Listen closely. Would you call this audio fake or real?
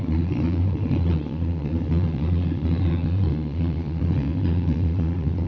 fake